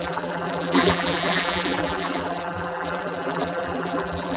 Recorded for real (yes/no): no